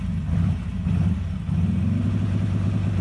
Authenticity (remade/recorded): recorded